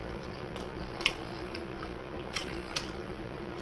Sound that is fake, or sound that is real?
fake